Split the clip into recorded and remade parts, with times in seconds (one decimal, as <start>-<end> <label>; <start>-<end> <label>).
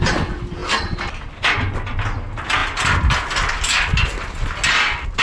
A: 0.0-5.2 recorded